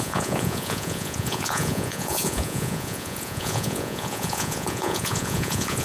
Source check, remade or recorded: remade